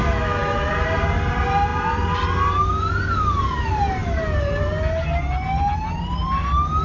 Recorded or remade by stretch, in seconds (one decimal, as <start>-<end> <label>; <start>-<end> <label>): 0.0-0.7 remade; 0.7-6.8 recorded